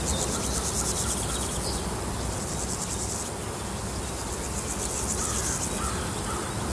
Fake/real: real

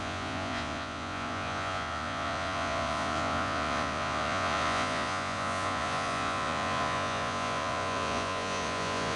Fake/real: fake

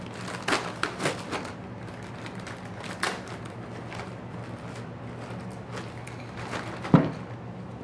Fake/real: real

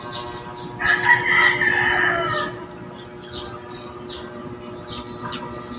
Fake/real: real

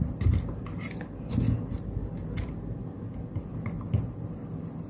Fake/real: real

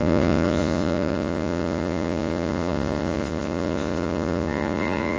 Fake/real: fake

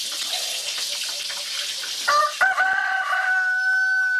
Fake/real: real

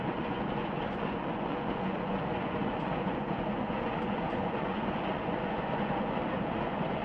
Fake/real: fake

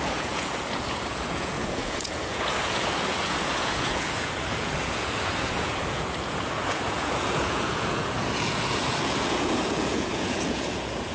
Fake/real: fake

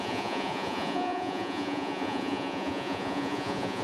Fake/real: fake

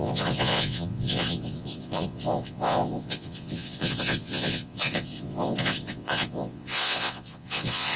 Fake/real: fake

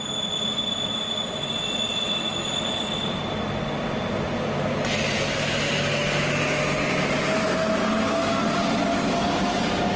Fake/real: real